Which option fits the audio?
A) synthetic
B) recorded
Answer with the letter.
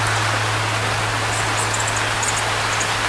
B